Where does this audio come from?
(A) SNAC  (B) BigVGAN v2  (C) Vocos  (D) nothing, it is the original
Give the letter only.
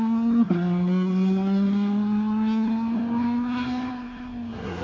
A